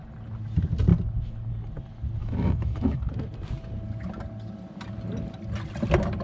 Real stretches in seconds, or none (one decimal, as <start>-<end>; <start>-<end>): 0.0-2.2; 3.0-6.2